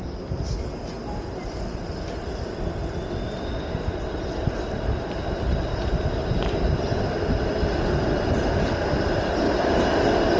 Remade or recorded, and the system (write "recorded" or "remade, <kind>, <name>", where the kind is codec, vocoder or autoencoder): recorded